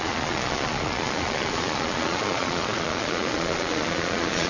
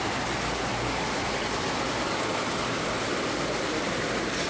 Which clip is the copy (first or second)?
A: first